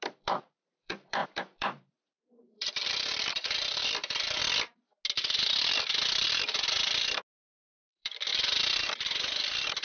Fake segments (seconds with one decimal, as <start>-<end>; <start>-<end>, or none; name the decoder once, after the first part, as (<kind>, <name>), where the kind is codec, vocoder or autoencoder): 0.0-4.4 (vocoder, BigVGAN v2); 7.6-8.3; 8.8-9.8